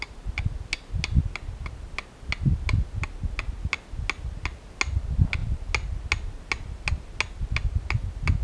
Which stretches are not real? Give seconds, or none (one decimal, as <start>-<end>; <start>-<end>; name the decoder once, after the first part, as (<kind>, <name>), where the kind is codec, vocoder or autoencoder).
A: none